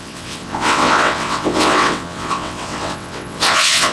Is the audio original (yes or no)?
no